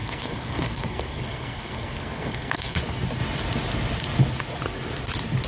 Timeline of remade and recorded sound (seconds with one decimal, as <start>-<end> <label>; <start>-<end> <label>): 0.0-2.8 remade; 2.8-5.5 recorded